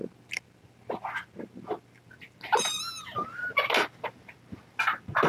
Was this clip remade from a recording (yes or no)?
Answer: no